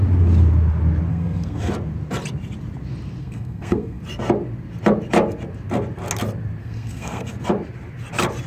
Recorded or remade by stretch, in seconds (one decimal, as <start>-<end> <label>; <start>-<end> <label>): 0.0-1.1 recorded; 1.1-1.7 remade; 1.7-3.2 recorded; 3.2-4.0 remade; 4.0-6.6 recorded; 6.6-7.3 remade; 7.3-8.5 recorded